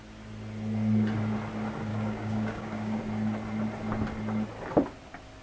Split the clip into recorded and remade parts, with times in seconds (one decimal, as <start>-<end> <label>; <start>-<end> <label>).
0.0-1.9 recorded; 1.9-3.0 remade; 3.0-5.4 recorded